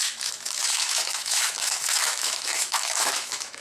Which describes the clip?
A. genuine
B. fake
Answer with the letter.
B